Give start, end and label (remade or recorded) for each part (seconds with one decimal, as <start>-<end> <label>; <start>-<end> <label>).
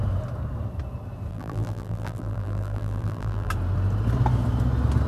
0.0-1.3 recorded; 1.3-3.5 remade; 3.5-5.1 recorded